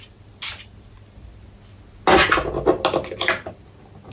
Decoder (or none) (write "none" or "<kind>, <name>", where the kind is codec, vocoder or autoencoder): none